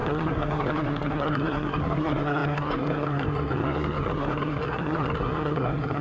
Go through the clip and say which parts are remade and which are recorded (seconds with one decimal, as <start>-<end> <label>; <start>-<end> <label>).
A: 0.0-6.0 remade